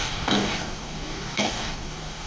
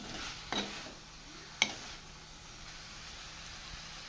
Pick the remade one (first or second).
first